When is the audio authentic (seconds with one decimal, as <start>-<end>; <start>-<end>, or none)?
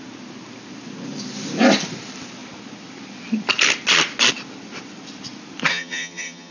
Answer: 0.0-5.7